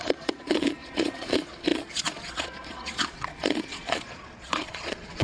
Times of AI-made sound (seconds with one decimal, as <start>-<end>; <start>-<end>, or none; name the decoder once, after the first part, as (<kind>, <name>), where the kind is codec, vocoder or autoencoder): 0.0-5.2 (vocoder, Vocos)